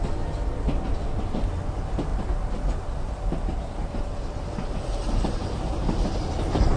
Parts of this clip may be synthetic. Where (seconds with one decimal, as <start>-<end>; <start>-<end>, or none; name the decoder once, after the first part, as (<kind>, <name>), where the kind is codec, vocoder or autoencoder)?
none